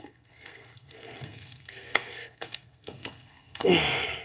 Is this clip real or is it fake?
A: fake